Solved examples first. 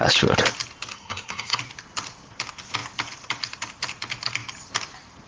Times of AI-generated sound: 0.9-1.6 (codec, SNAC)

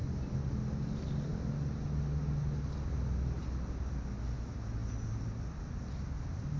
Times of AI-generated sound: none

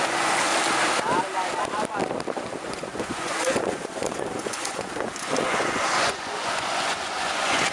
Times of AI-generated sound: 0.0-0.5 (vocoder, Vocos); 2.6-7.7

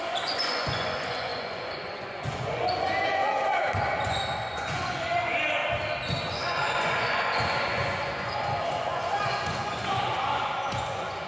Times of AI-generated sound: 0.0-5.6 (vocoder, Vocos); 6.2-11.3

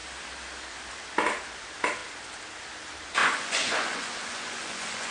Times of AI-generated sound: 3.2-5.1 (vocoder, Vocos)